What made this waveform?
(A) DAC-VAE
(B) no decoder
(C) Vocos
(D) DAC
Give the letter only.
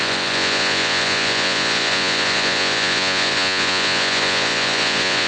C